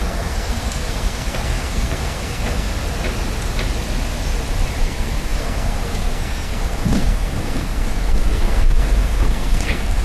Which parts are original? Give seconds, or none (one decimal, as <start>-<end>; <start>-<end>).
2.7-4.8